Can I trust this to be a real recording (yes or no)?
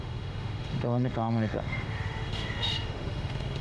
no